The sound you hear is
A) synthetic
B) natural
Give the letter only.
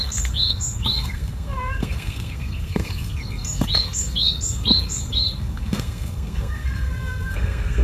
A